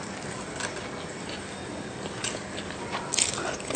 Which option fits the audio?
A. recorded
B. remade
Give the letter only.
A